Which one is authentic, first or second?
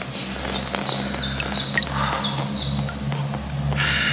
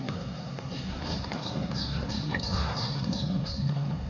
first